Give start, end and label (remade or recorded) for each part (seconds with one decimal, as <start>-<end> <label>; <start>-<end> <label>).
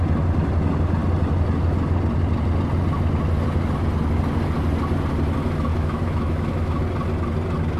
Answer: 0.0-5.7 recorded; 5.7-6.8 remade; 6.8-7.8 recorded